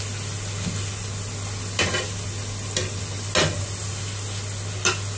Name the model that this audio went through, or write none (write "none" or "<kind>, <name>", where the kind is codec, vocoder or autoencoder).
none